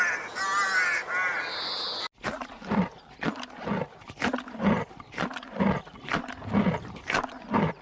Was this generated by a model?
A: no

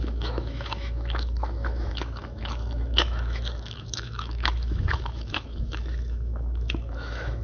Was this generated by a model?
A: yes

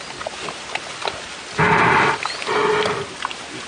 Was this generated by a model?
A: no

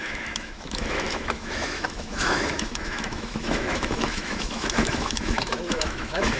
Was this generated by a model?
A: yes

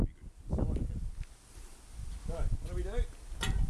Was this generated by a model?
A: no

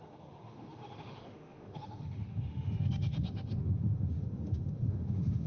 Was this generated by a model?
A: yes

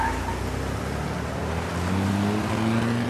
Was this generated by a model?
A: no